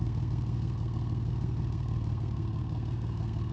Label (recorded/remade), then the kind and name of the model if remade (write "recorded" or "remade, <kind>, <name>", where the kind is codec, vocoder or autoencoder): remade, codec, SNAC